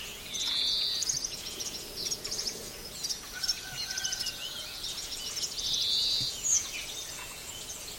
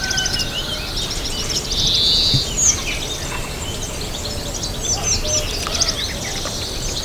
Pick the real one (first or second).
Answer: second